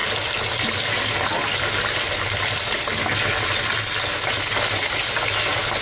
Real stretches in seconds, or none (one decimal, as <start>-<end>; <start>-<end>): 0.0-5.8